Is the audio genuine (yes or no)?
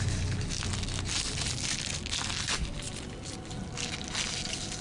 yes